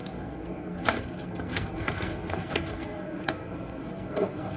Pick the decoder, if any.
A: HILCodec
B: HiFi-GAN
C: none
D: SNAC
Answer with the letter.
D